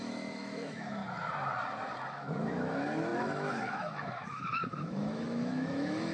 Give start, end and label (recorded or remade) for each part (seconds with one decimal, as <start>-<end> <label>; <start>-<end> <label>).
0.0-1.0 remade; 1.0-2.1 recorded; 2.1-6.1 remade